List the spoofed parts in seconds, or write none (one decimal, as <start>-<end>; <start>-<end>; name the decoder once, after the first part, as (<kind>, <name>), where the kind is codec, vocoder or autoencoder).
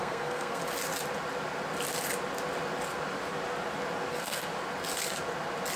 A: 0.0-0.6 (codec, SNAC); 4.1-4.5